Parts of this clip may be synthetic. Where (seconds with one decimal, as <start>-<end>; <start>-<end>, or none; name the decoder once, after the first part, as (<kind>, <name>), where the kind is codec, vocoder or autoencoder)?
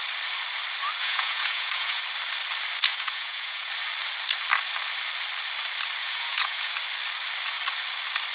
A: 1.0-2.0 (vocoder, Vocos); 2.9-3.7; 6.0-6.7